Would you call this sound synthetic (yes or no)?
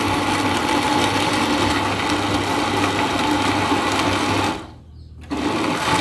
no